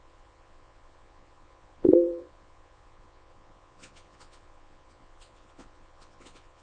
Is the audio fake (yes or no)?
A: yes